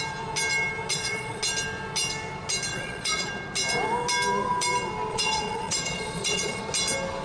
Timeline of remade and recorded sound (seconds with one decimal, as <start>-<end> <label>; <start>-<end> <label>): 0.0-0.9 recorded; 0.9-1.4 remade; 1.4-2.7 recorded; 2.7-3.3 remade; 3.3-5.1 recorded; 5.1-6.6 remade; 6.6-7.2 recorded